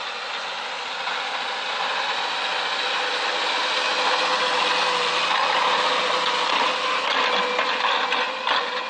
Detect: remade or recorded recorded